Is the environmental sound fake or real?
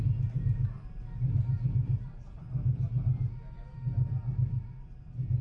real